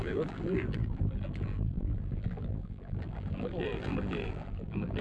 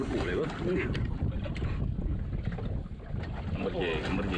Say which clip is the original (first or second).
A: second